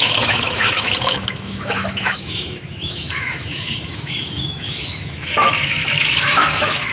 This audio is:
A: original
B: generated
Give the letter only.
B